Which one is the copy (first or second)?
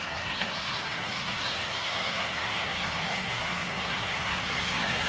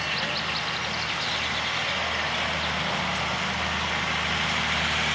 first